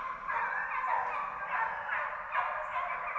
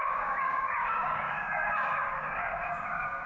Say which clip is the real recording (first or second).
first